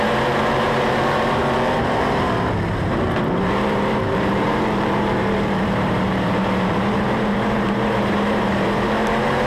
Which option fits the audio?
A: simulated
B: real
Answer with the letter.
A